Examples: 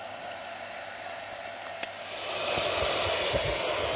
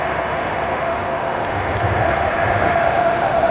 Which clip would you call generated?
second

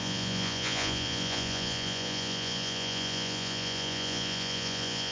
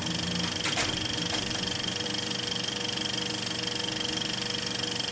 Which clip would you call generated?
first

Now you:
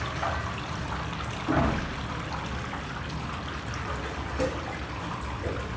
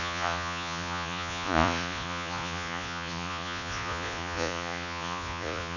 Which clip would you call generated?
second